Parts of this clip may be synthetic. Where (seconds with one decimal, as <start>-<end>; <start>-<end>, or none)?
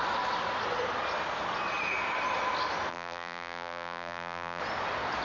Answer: 2.9-4.6